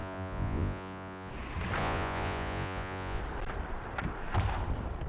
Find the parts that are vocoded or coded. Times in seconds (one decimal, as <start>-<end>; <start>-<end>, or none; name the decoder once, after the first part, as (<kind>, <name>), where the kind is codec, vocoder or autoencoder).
0.0-1.3 (vocoder, Vocos); 1.8-3.2